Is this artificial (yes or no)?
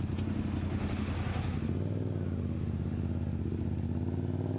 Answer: no